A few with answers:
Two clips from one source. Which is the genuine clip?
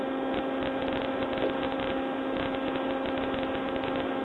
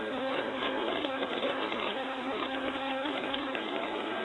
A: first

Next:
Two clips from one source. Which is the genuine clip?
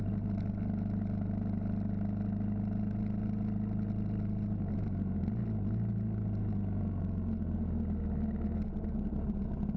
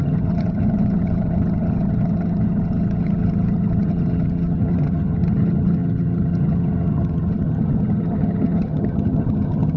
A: first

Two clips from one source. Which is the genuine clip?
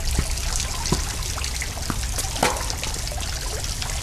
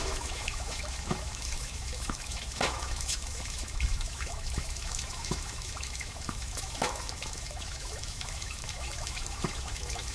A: first